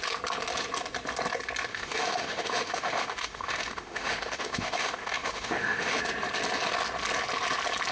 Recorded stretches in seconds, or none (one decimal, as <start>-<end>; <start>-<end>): 0.0-1.7; 6.0-7.9